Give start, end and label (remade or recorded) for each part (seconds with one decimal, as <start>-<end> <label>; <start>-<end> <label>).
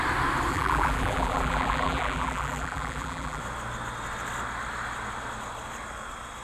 0.0-0.5 recorded; 0.5-3.4 remade; 3.4-6.4 recorded